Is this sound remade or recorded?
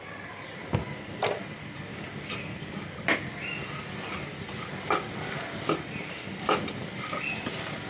recorded